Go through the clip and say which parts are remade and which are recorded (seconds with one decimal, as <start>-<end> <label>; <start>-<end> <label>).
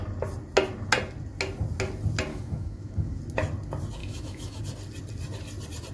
0.0-2.3 recorded; 2.3-3.2 remade; 3.2-4.0 recorded; 4.0-4.6 remade; 4.6-5.9 recorded